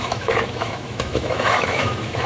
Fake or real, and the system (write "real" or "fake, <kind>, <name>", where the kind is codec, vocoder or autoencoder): fake, autoencoder, DAC-VAE